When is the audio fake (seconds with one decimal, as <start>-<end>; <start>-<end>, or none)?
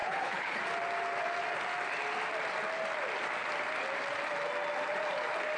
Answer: 0.0-0.6